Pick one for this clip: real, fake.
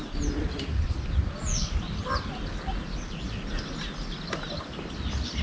real